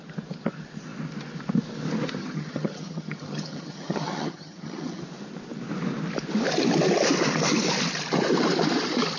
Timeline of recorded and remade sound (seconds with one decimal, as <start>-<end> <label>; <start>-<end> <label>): 0.0-2.2 recorded; 2.2-5.0 remade; 5.0-9.2 recorded